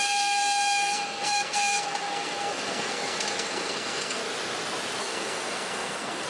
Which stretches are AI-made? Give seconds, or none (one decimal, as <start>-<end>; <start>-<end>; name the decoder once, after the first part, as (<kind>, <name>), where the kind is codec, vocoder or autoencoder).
0.0-4.2 (codec, SNAC); 5.0-6.3